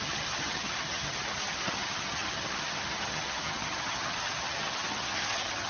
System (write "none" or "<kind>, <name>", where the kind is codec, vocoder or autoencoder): vocoder, HiFi-GAN